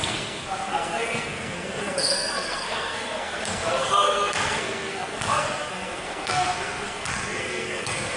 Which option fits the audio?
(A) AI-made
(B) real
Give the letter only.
A